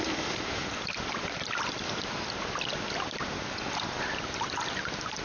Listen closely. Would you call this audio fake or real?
real